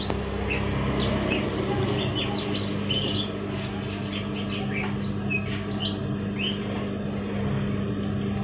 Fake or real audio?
real